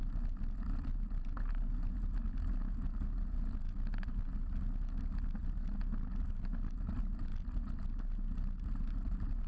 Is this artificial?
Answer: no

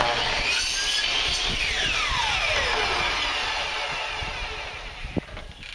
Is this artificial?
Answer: no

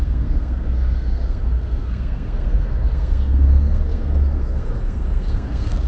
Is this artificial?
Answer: yes